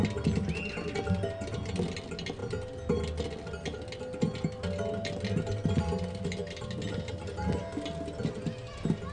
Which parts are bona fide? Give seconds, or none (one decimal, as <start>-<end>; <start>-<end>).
0.0-9.1